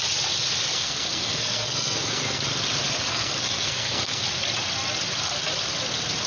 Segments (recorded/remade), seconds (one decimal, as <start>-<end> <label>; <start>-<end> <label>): 0.0-0.7 recorded; 0.7-2.4 remade; 2.4-3.1 recorded; 3.1-4.2 remade; 4.2-6.3 recorded

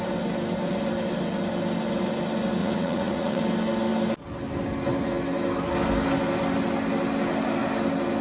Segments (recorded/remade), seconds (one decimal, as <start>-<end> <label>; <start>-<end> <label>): 0.0-2.6 recorded; 2.6-3.4 remade; 3.4-8.2 recorded

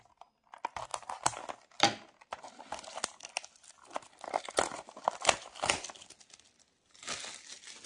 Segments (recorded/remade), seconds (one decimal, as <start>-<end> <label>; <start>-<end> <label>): 0.0-7.9 recorded

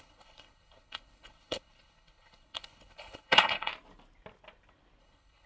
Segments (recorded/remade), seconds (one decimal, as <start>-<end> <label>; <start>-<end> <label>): 0.0-3.7 remade; 3.7-5.0 recorded; 5.0-5.5 remade

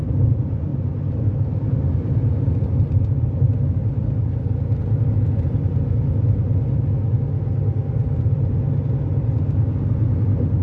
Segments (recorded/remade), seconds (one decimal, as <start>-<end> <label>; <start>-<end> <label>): 0.0-10.6 recorded

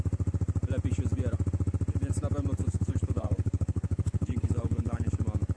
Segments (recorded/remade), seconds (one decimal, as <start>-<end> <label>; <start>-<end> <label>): 0.0-2.6 recorded; 2.6-5.1 remade; 5.1-5.6 recorded

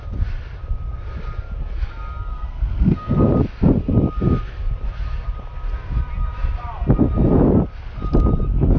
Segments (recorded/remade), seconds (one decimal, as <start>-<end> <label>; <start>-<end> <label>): 0.0-2.3 recorded; 2.3-3.3 remade; 3.3-8.8 recorded

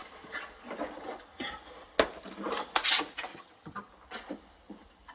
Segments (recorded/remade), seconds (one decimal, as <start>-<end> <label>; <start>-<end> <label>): 0.0-3.3 recorded; 3.3-3.9 remade; 3.9-5.1 recorded